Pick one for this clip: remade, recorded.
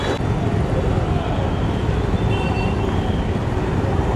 recorded